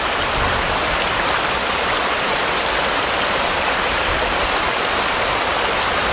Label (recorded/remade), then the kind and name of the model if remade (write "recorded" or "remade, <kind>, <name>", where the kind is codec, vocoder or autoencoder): remade, vocoder, BigVGAN v2